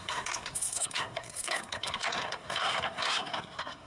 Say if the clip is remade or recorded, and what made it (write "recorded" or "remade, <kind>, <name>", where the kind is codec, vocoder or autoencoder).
remade, codec, SNAC